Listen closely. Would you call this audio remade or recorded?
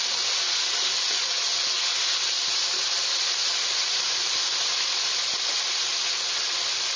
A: recorded